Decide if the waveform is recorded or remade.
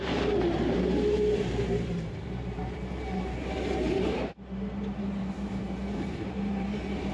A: remade